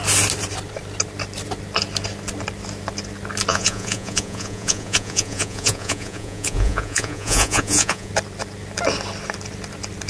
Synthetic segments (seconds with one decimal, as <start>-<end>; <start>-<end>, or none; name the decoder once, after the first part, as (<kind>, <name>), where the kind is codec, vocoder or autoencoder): 3.5-8.1 (vocoder, Vocos)